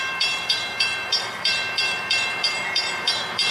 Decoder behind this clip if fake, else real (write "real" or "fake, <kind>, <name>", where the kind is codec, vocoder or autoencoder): fake, vocoder, BigVGAN v2